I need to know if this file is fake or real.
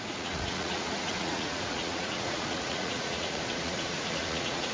fake